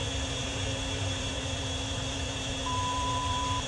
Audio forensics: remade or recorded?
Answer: remade